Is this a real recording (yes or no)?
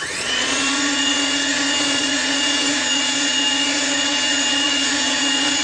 no